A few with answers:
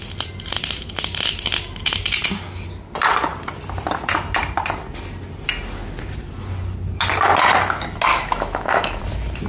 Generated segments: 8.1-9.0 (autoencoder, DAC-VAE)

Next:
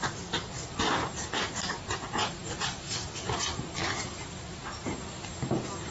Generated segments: none

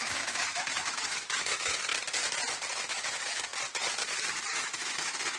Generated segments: 0.0-1.9 (autoencoder, DAC-VAE); 2.7-3.5; 4.4-5.4